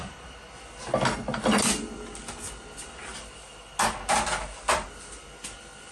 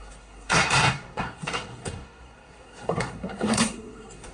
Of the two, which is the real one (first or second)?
first